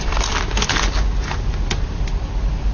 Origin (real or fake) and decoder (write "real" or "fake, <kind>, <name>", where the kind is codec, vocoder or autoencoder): real